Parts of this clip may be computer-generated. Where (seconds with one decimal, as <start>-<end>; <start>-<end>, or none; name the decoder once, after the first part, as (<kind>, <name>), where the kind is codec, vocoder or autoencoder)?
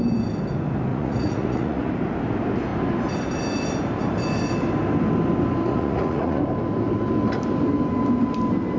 0.9-1.9 (vocoder, Vocos); 5.7-6.4